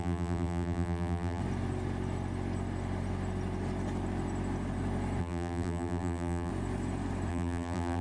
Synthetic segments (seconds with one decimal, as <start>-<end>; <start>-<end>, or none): 0.0-1.4; 5.2-6.5; 7.3-8.0